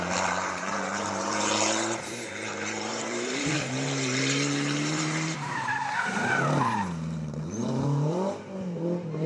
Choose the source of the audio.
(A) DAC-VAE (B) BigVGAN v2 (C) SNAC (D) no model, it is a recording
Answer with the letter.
B